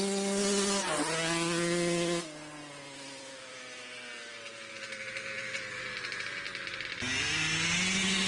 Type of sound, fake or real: real